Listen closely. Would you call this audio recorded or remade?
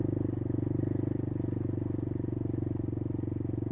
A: recorded